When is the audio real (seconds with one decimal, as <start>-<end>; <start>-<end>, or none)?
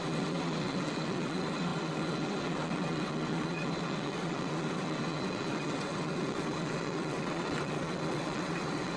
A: none